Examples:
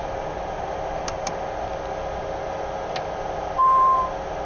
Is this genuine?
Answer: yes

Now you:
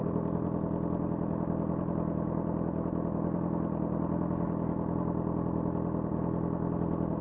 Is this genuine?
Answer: yes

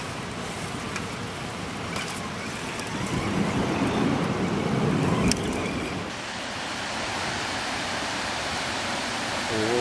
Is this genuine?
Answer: no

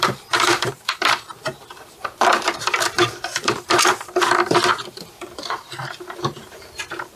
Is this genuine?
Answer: no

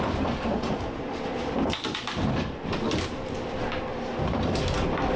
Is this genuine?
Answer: yes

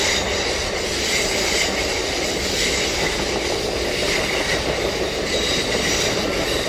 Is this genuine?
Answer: yes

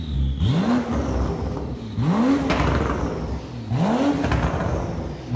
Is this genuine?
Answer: yes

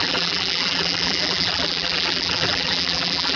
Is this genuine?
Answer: no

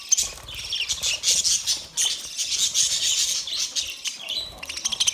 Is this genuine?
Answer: yes